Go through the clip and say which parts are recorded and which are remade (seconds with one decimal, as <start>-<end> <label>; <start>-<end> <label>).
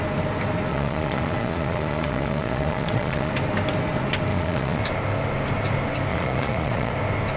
0.0-0.7 recorded; 0.7-3.3 remade; 3.3-4.3 recorded; 4.3-4.8 remade; 4.8-6.1 recorded; 6.1-6.9 remade; 6.9-7.4 recorded